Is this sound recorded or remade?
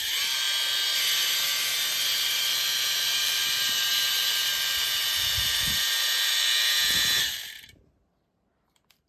remade